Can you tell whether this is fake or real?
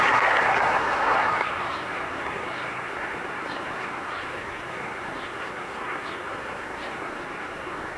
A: fake